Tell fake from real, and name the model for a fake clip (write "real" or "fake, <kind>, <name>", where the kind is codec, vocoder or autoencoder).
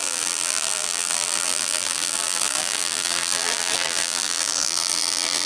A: fake, vocoder, BigVGAN v2